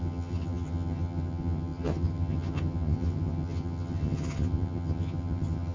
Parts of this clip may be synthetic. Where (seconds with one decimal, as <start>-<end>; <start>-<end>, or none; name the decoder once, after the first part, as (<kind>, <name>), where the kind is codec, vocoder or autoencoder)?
0.0-5.7 (vocoder, HiFi-GAN)